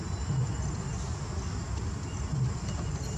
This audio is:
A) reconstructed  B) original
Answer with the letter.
B